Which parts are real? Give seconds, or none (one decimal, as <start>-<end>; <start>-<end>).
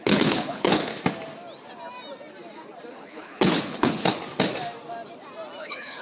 0.9-2.9; 4.1-5.6